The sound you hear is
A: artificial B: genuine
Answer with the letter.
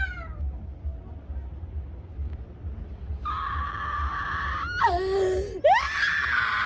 B